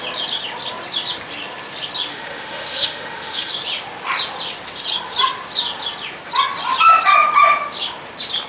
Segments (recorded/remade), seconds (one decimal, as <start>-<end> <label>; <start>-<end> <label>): 0.0-2.1 recorded; 2.1-3.5 remade; 3.5-8.5 recorded